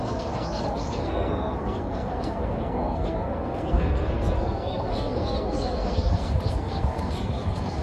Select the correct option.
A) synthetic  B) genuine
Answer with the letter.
A